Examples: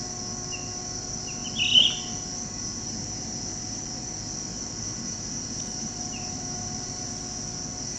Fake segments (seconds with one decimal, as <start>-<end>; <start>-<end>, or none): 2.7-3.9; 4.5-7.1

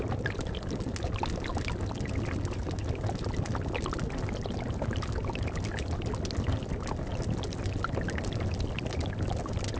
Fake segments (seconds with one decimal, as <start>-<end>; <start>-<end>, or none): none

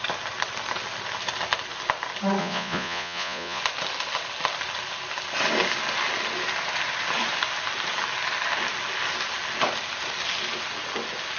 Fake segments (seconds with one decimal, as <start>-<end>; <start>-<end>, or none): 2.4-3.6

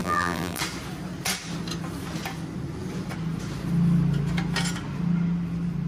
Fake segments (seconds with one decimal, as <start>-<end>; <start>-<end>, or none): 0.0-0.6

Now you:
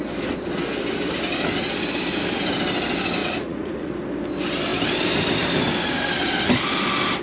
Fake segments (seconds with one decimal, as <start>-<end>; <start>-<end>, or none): 3.2-3.9

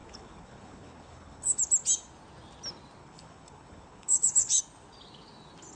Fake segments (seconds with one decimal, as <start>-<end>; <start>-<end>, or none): 0.0-1.6; 3.0-4.6

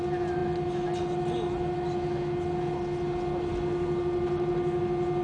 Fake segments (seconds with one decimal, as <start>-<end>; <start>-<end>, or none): none

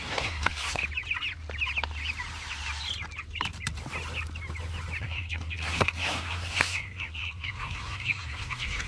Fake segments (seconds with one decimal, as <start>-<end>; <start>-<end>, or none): 0.0-0.8; 5.0-8.9